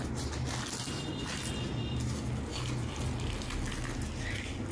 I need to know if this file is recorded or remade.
recorded